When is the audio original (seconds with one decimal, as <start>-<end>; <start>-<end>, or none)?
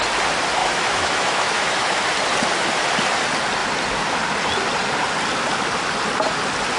0.0-0.6; 2.0-6.8